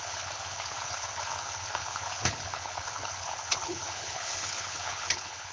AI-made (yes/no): yes